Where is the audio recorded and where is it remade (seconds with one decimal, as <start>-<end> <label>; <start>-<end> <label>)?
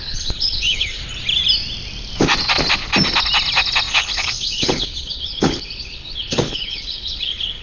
0.0-1.0 remade; 1.0-3.9 recorded; 3.9-7.6 remade